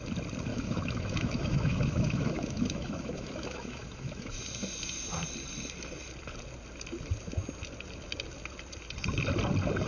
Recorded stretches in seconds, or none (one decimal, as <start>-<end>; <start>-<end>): 0.0-0.5; 4.4-9.9

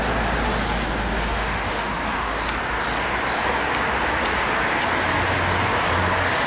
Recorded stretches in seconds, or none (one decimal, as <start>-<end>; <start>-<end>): 0.0-1.0; 2.4-6.5

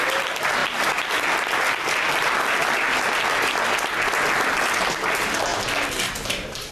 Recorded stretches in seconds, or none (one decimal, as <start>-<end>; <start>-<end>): 0.0-6.7